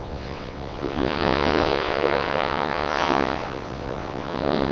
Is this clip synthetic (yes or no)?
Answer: yes